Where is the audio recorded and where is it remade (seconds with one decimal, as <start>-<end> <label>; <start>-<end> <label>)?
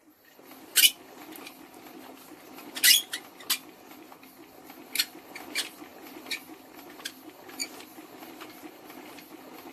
0.0-5.9 recorded; 5.9-6.8 remade; 6.8-7.6 recorded; 7.6-8.5 remade; 8.5-9.7 recorded